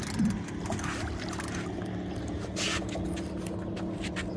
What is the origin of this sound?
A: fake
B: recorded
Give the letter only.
B